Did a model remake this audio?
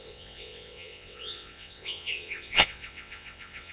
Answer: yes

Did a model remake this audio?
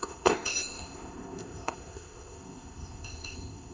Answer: yes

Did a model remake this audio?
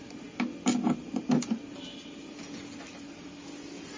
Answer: no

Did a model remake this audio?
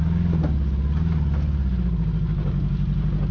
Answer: no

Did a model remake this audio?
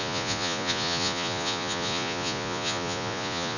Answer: yes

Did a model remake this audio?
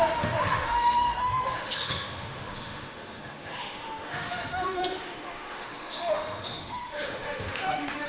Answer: yes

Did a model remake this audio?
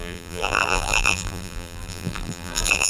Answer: yes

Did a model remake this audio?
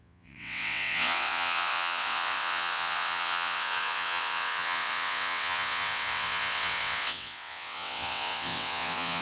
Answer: yes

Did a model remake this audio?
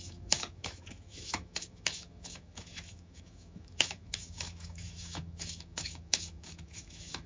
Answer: yes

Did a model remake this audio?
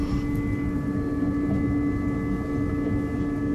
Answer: no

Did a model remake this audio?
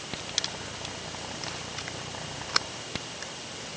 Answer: no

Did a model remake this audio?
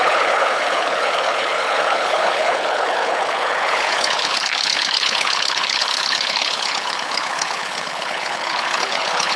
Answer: yes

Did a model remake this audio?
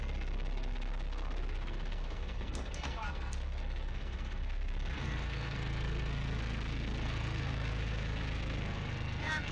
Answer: yes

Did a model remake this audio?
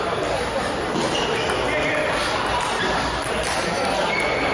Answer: no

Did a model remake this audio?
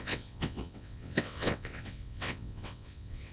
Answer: yes